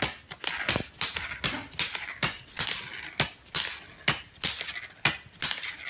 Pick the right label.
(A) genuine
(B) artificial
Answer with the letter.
A